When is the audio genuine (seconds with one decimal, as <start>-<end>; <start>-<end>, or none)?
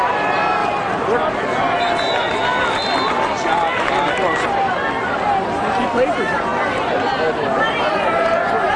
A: 0.0-8.8